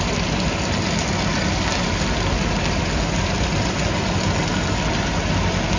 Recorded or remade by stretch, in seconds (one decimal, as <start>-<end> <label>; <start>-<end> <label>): 0.0-5.8 recorded